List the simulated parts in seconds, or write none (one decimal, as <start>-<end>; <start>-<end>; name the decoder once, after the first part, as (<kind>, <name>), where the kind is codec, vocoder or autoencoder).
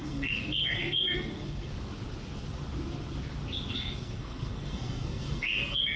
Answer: 0.0-1.7 (codec, SNAC); 3.7-6.0